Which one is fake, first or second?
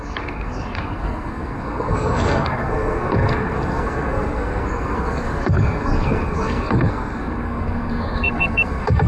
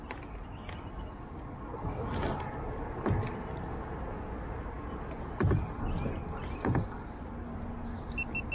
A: first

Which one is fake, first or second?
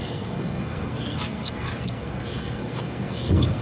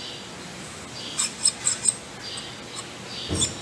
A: first